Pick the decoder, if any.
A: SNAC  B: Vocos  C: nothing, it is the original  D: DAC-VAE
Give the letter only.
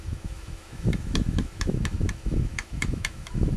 D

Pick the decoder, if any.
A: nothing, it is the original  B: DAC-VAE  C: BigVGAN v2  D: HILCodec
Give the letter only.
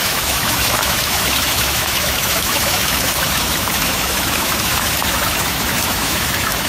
B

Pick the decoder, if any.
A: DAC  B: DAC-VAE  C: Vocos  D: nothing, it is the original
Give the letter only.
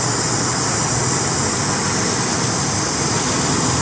D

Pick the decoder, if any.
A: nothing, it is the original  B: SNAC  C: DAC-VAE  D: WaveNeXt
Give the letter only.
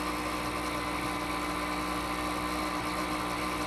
A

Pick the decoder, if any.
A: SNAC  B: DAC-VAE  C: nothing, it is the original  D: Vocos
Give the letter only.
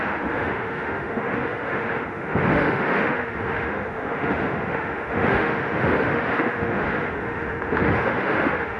B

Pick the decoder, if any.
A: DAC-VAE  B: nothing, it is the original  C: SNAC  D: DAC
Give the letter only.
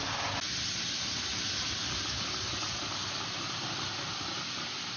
B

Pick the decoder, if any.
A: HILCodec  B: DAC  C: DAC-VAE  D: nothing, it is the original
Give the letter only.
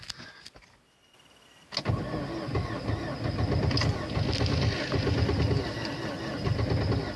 D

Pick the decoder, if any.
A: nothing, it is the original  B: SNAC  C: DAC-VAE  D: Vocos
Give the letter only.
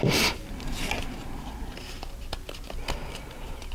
A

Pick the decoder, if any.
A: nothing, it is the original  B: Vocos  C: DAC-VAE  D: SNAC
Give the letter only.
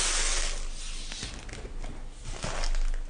A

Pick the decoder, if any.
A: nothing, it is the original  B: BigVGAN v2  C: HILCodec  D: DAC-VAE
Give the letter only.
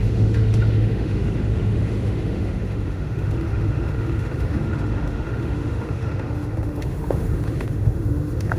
D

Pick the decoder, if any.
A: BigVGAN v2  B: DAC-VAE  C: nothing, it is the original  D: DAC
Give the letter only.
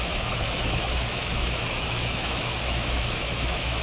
B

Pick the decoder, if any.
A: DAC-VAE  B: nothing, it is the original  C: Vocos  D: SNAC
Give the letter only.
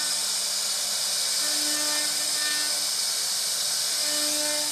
B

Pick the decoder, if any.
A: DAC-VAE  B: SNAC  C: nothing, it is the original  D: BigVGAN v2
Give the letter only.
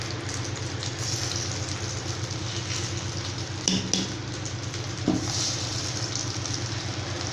C